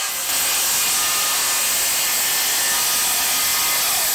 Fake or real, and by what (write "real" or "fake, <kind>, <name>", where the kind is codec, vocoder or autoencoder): real